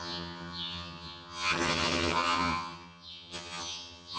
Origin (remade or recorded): remade